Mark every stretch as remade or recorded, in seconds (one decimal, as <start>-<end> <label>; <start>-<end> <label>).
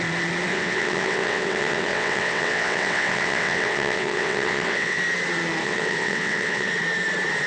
0.0-0.5 recorded; 0.5-5.0 remade; 5.0-5.6 recorded; 5.6-6.7 remade; 6.7-7.5 recorded